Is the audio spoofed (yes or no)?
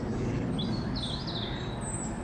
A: no